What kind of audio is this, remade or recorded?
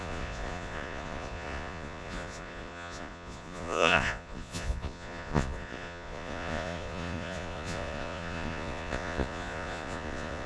remade